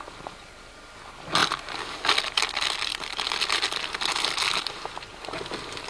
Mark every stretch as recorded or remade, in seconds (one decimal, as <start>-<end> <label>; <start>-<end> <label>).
0.0-5.9 recorded

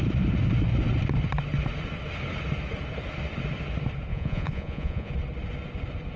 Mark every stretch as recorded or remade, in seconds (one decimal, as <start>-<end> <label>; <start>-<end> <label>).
0.0-4.1 recorded; 4.1-5.1 remade; 5.1-6.2 recorded

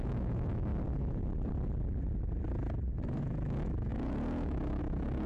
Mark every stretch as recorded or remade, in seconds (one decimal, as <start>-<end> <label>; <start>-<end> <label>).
0.0-0.7 remade; 0.7-3.2 recorded; 3.2-5.3 remade

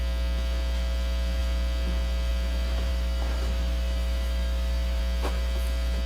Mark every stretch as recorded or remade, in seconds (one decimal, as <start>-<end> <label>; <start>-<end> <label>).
0.0-2.9 recorded; 2.9-5.0 remade; 5.0-6.1 recorded

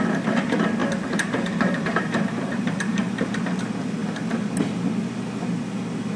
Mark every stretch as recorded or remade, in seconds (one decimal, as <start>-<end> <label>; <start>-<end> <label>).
0.0-0.8 recorded; 0.8-3.6 remade; 3.6-6.2 recorded

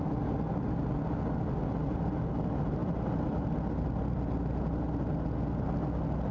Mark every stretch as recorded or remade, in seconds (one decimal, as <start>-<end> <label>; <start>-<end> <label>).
0.0-6.3 recorded